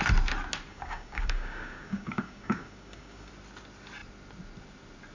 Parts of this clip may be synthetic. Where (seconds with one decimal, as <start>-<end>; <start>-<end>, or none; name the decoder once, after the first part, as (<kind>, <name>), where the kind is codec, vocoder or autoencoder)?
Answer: 0.7-3.3 (codec, DAC)